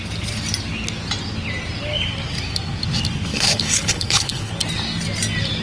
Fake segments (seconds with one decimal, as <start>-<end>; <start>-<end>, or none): 3.3-4.5